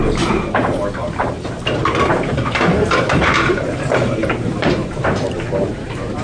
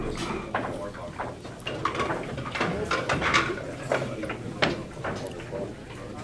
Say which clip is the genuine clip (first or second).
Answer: second